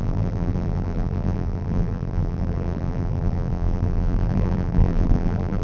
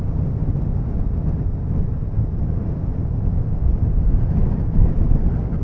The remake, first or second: first